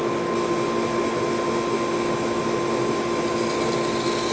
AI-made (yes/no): no